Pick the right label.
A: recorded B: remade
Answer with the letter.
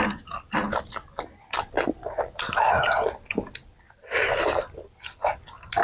A